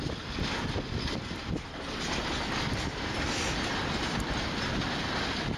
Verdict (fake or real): real